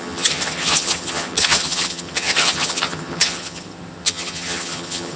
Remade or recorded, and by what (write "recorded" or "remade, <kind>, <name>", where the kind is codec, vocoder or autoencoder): remade, vocoder, HiFi-GAN